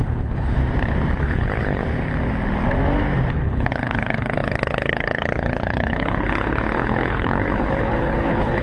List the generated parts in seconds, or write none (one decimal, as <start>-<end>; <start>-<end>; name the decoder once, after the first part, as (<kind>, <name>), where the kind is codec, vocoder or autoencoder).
0.0-0.6 (codec, HILCodec); 1.2-1.8; 3.3-8.6